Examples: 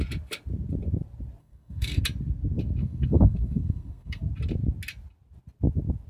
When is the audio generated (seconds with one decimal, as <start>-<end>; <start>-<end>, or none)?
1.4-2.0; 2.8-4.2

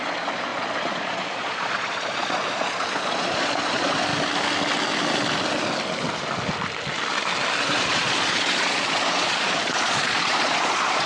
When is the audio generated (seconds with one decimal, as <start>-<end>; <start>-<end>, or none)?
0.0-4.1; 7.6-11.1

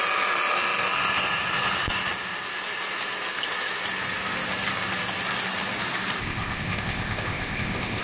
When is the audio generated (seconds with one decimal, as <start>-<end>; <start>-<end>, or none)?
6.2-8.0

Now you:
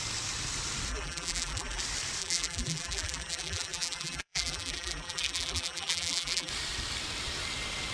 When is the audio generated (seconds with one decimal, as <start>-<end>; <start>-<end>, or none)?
0.9-1.8; 2.2-6.5